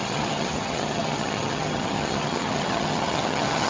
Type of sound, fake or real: fake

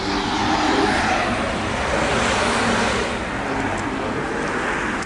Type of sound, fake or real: real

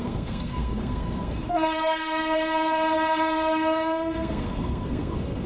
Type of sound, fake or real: fake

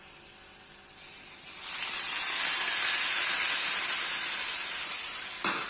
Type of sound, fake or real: real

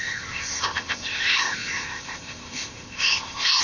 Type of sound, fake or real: fake